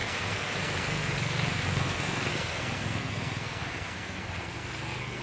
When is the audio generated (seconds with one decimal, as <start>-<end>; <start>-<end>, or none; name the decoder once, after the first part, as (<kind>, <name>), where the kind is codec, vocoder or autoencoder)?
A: 0.0-5.2 (codec, SNAC)